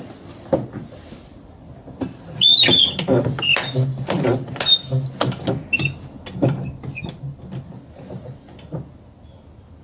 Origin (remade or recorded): recorded